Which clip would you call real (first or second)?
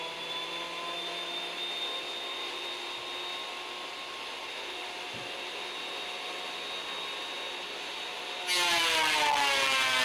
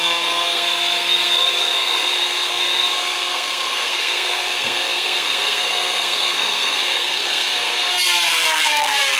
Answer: first